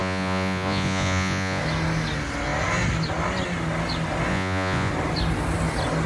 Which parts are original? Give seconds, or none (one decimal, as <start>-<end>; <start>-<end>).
1.6-4.3; 4.9-6.1